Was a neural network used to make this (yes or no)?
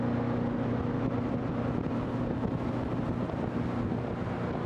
no